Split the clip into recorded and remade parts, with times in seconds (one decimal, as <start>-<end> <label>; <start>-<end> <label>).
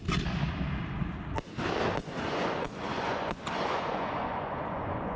0.0-2.0 recorded; 2.0-5.2 remade